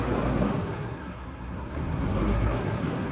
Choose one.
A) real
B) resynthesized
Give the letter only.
B